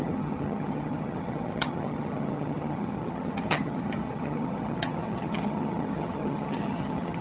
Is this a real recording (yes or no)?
no